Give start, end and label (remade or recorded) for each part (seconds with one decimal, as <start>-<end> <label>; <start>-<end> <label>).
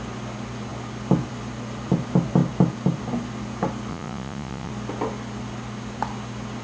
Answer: 0.0-3.9 recorded; 3.9-4.7 remade; 4.7-6.6 recorded